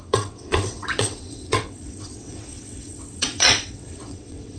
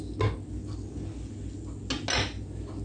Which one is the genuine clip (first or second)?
second